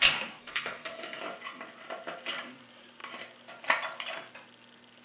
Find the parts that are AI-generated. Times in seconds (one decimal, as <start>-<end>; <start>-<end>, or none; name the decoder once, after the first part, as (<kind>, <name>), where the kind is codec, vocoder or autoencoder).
0.4-1.2 (codec, SNAC)